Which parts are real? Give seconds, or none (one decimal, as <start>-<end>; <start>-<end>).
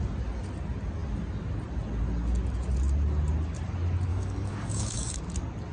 0.0-4.1; 5.2-5.7